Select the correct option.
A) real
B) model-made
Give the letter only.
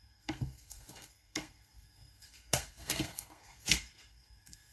B